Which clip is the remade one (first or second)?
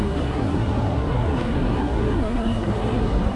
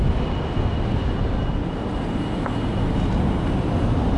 first